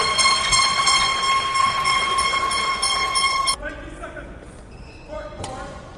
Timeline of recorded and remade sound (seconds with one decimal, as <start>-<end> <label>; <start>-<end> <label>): 0.0-1.1 remade; 1.1-1.6 recorded; 1.6-6.0 remade